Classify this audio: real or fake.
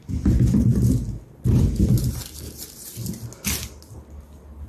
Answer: real